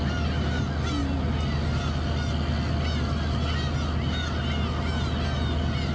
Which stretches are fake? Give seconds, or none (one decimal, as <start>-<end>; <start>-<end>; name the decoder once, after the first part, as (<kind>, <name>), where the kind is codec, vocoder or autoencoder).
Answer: none

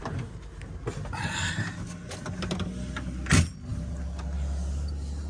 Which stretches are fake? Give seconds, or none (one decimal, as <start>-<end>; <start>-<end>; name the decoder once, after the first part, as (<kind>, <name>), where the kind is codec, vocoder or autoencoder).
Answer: none

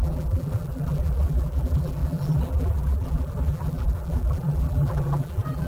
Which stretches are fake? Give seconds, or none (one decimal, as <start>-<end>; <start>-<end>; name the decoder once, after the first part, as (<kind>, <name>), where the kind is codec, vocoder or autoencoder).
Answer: 0.0-5.7 (vocoder, BigVGAN v2)

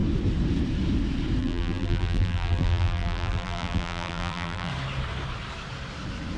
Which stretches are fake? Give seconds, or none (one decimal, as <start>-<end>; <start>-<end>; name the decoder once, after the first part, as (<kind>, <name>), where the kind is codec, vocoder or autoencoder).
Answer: 1.4-4.7 (vocoder, BigVGAN v2)

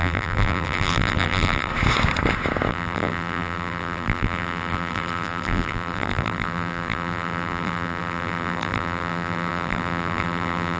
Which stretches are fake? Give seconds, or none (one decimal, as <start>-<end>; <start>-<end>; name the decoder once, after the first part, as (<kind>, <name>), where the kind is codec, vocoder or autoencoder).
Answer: 0.0-1.7 (vocoder, BigVGAN v2); 2.7-10.8

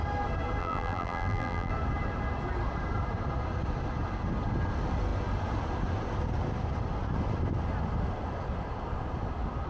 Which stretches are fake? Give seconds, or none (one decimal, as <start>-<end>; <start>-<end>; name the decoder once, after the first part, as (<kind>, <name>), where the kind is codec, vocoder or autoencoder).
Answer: 0.6-1.7 (vocoder, BigVGAN v2)